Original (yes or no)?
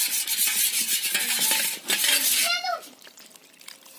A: yes